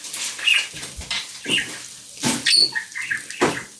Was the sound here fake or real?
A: real